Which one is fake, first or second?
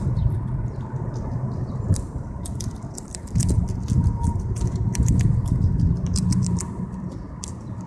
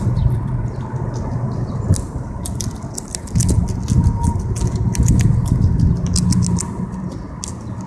first